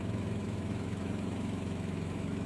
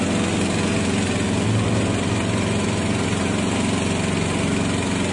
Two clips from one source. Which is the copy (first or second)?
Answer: first